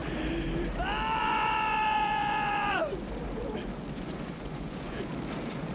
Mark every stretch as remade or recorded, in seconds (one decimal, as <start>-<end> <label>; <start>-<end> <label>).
0.0-1.2 recorded; 1.2-2.8 remade; 2.8-3.9 recorded; 3.9-5.1 remade; 5.1-5.7 recorded